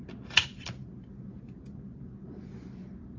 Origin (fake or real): real